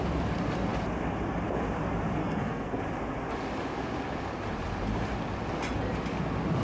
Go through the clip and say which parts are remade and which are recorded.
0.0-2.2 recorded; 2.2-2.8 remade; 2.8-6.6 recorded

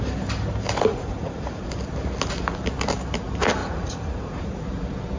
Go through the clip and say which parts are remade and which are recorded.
0.0-0.9 recorded; 0.9-1.7 remade; 1.7-3.6 recorded; 3.6-4.6 remade; 4.6-5.2 recorded

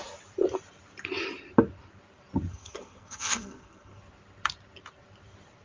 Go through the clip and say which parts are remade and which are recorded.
0.0-2.5 recorded; 2.5-4.0 remade; 4.0-5.6 recorded

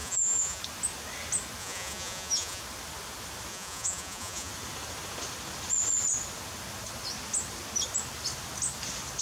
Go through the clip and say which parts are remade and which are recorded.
0.0-0.6 remade; 0.6-1.6 recorded; 1.6-2.6 remade; 2.6-3.5 recorded; 3.5-4.5 remade; 4.5-9.2 recorded